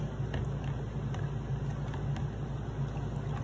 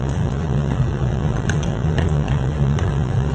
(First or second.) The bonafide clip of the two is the first